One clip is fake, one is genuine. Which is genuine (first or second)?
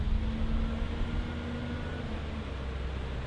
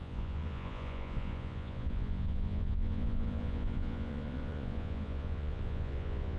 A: first